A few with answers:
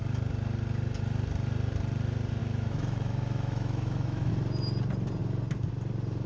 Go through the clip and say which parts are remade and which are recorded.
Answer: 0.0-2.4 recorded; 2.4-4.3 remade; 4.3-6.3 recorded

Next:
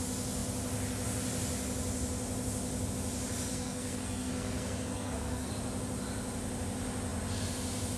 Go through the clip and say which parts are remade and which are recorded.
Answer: 0.0-3.5 recorded; 3.5-5.5 remade; 5.5-8.0 recorded